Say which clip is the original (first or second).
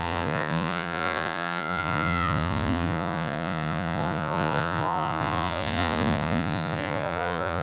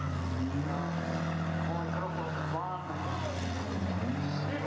second